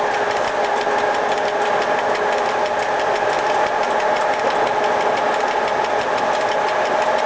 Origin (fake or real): real